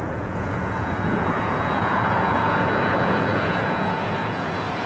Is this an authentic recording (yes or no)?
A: no